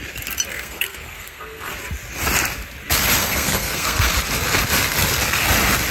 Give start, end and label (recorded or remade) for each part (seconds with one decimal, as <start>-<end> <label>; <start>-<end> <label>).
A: 0.0-0.5 recorded; 0.5-1.7 remade; 1.7-3.2 recorded; 3.2-4.1 remade; 4.1-5.9 recorded